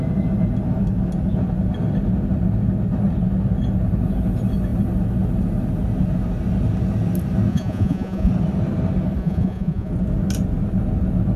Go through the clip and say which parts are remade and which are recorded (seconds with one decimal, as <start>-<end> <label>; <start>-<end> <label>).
0.0-7.5 recorded; 7.5-8.3 remade; 8.3-9.2 recorded; 9.2-9.9 remade; 9.9-11.4 recorded

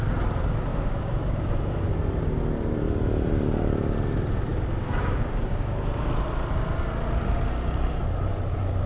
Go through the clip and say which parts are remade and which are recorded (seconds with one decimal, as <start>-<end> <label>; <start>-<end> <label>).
0.0-0.7 recorded; 0.7-1.9 remade; 1.9-4.5 recorded; 4.5-6.1 remade; 6.1-8.9 recorded

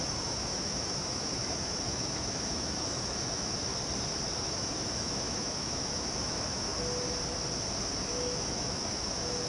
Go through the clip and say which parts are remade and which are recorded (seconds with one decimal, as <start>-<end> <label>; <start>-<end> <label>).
0.0-3.7 remade; 3.7-4.4 recorded; 4.4-6.7 remade; 6.7-8.0 recorded; 8.0-9.5 remade

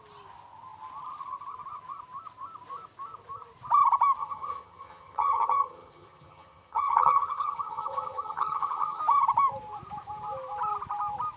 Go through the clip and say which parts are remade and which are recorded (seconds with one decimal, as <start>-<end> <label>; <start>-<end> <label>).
0.0-4.2 recorded; 4.2-9.0 remade; 9.0-11.4 recorded

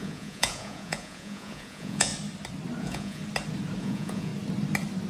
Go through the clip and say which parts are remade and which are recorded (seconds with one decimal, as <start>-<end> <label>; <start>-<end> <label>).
0.0-2.1 remade; 2.1-2.8 recorded; 2.8-3.2 remade; 3.2-3.8 recorded; 3.8-4.3 remade; 4.3-5.1 recorded

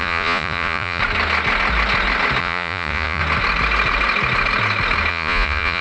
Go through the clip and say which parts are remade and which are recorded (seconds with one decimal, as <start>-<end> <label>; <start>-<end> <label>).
0.0-1.0 remade; 1.0-2.4 recorded; 2.4-3.2 remade; 3.2-5.1 recorded; 5.1-5.8 remade

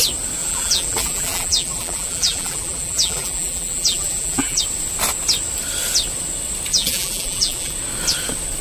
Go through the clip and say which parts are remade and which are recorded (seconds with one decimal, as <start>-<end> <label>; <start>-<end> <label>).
0.0-0.4 recorded; 0.4-4.6 remade; 4.6-6.7 recorded; 6.7-7.7 remade; 7.7-8.6 recorded

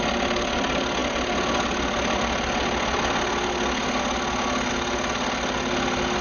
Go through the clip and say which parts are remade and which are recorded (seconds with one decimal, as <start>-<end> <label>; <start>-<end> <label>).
0.0-6.2 recorded